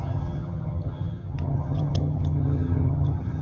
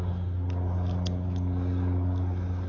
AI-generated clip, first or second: first